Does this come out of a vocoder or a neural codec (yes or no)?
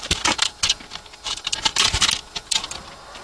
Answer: no